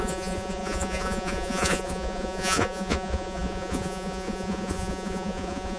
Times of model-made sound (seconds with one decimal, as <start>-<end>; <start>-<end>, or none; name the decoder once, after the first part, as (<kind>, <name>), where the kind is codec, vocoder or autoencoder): 0.0-5.8 (vocoder, Vocos)